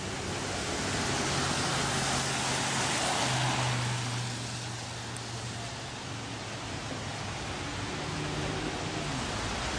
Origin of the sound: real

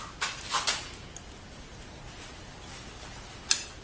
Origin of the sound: real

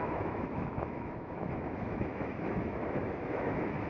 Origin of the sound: fake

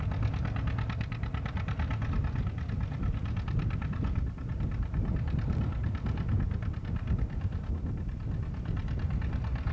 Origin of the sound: real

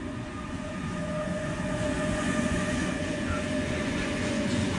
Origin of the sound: fake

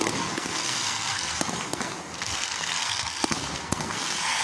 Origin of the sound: fake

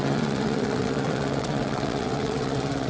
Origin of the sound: fake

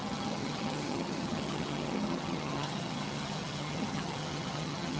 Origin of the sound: fake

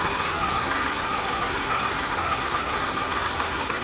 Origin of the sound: fake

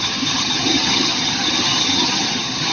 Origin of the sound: fake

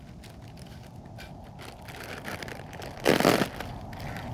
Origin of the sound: real